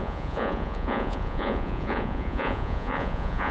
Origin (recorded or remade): remade